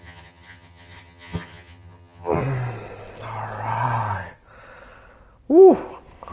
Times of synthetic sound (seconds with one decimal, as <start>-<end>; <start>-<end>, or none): 0.0-2.4

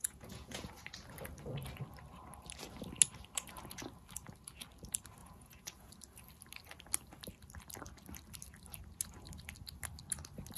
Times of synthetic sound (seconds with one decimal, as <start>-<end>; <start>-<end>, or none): 0.0-0.7; 5.2-5.9